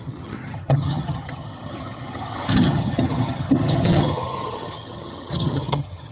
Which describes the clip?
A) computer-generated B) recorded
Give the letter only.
A